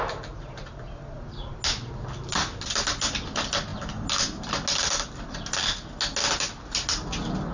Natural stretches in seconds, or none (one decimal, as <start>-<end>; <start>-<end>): 0.0-7.5